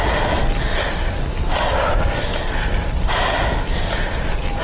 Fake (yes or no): no